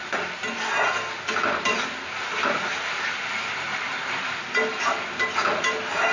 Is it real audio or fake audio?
real